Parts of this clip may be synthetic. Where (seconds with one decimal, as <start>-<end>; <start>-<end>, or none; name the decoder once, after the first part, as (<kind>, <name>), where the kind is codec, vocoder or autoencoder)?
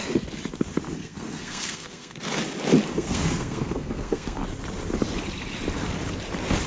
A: 1.0-2.2 (codec, SNAC); 2.9-4.4